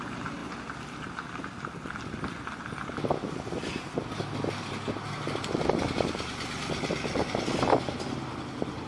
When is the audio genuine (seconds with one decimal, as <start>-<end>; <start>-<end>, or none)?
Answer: 0.0-8.9